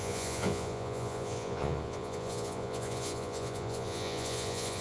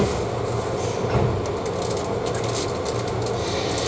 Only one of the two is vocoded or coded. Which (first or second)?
first